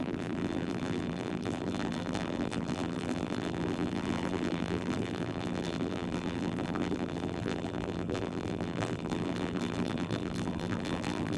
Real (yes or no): no